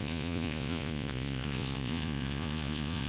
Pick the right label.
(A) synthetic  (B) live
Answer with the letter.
A